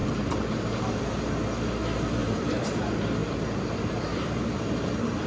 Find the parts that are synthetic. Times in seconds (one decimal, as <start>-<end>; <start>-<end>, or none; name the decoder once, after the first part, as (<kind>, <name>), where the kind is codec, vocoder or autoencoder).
0.0-1.2 (vocoder, BigVGAN v2); 2.2-2.8; 3.2-5.3